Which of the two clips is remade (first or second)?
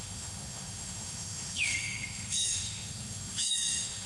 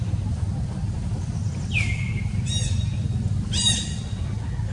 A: first